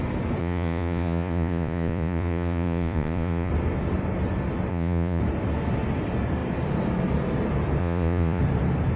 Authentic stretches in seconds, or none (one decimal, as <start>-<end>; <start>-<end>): 0.0-0.4; 3.5-4.7; 5.2-7.8; 8.4-9.0

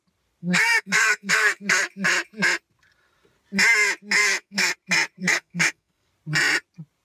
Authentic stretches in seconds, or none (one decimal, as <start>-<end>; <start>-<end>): 0.0-0.4; 1.8-4.2; 4.7-5.2; 6.1-7.0

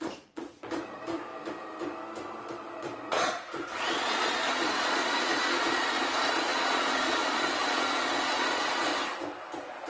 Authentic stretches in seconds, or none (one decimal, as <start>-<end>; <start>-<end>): 1.3-2.4; 8.9-9.5

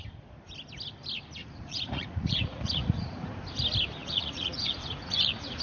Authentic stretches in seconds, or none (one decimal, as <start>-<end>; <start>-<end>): 0.0-1.4; 3.2-4.0

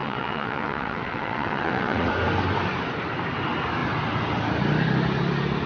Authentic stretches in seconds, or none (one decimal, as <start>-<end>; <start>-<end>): 2.1-5.7

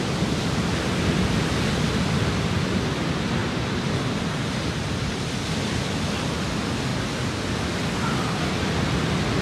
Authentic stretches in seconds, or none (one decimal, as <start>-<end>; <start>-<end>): 0.0-3.4; 5.8-9.4

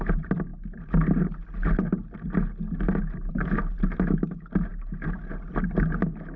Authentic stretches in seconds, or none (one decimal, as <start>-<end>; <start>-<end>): 0.0-6.4

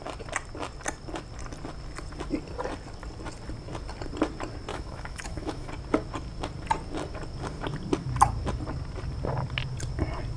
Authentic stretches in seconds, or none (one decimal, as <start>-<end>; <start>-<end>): 0.0-4.7; 5.7-10.4